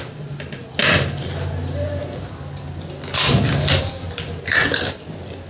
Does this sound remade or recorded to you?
recorded